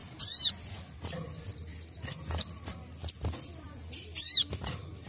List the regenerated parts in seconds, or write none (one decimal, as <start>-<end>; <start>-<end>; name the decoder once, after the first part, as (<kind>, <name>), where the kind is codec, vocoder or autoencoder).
none